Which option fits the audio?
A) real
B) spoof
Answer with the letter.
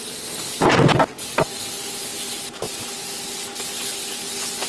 A